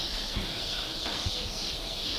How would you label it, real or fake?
fake